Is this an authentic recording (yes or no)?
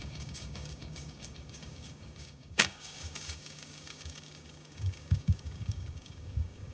no